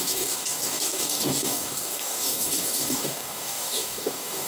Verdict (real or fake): fake